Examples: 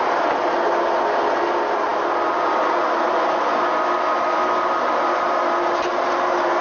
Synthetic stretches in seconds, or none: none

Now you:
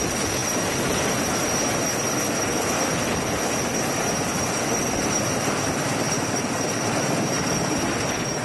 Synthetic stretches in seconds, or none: none